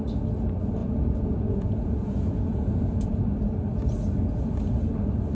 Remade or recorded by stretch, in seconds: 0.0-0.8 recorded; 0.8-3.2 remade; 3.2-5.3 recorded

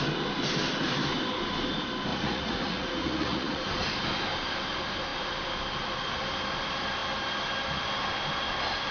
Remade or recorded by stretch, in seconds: 0.0-2.1 recorded; 2.1-3.6 remade; 3.6-8.9 recorded

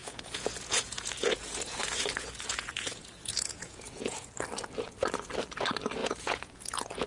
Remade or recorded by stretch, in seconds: 0.0-4.3 remade; 4.3-6.0 recorded; 6.0-7.1 remade

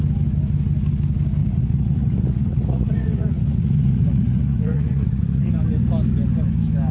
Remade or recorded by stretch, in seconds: 0.0-1.4 recorded; 1.4-5.5 remade; 5.5-6.9 recorded

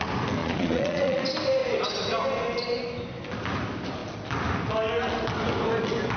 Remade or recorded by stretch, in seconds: 0.0-0.4 recorded; 0.4-1.2 remade; 1.2-6.2 recorded

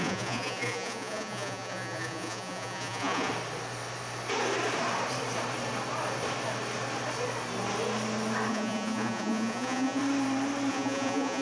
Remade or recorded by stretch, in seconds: 0.0-3.3 remade; 3.3-8.5 recorded; 8.5-10.0 remade; 10.0-10.7 recorded; 10.7-11.4 remade

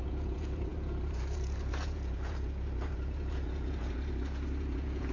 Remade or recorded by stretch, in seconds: 0.0-5.1 remade